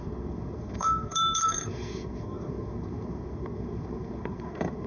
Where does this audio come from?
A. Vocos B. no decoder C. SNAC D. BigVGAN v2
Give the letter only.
C